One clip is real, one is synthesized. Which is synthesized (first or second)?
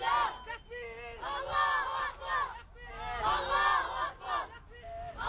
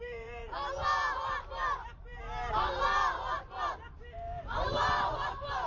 second